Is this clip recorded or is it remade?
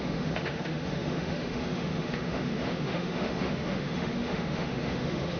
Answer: remade